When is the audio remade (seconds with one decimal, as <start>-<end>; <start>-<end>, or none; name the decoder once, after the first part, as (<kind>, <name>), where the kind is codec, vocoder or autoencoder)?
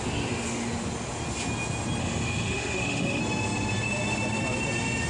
2.0-3.2 (autoencoder, DAC-VAE)